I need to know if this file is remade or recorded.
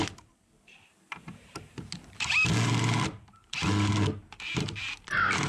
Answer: remade